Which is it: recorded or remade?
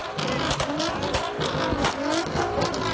recorded